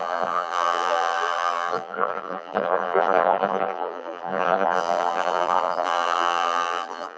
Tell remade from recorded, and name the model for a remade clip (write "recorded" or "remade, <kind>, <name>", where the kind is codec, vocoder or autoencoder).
remade, vocoder, BigVGAN v2